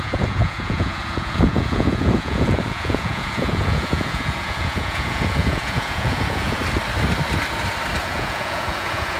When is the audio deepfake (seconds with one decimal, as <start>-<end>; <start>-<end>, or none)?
0.0-6.6; 8.0-9.2